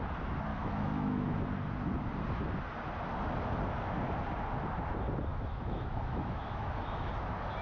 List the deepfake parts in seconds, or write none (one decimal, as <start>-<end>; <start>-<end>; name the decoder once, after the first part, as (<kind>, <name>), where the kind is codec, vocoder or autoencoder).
0.5-1.4 (autoencoder, DAC-VAE); 5.3-7.1